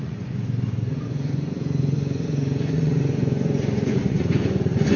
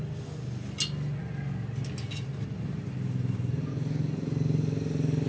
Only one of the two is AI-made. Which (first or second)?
first